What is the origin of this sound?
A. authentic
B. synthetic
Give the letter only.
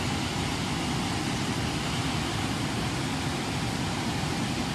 A